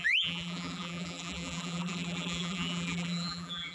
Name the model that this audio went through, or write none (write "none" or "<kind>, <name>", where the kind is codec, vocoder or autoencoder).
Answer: vocoder, BigVGAN v2